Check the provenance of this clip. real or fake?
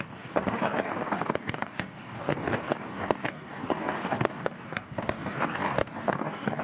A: fake